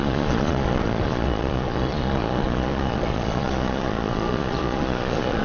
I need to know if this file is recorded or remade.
remade